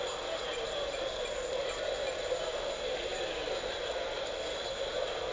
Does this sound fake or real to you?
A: real